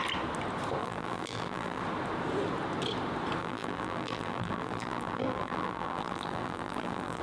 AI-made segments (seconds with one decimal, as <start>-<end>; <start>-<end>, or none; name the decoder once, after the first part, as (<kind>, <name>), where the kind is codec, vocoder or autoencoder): 0.8-1.8 (vocoder, BigVGAN v2); 3.4-7.2